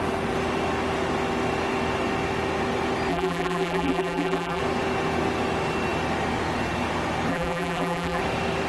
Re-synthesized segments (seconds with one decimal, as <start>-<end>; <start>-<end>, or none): 3.1-4.6; 7.3-8.2